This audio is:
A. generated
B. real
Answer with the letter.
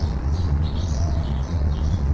A